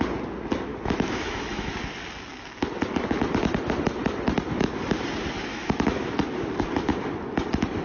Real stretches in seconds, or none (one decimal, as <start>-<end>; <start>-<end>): 0.0-0.7; 1.7-5.5; 6.1-7.8

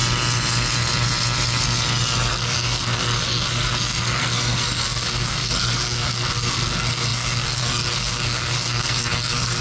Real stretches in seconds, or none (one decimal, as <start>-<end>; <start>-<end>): 0.0-2.3

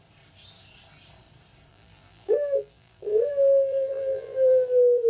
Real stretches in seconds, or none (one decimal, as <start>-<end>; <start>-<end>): 0.0-1.7

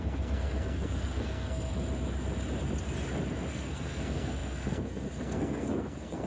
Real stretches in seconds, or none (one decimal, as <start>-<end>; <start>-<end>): 1.7-3.5

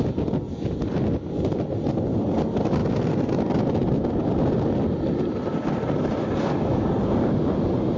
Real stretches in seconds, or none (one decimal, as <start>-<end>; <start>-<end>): 0.0-8.0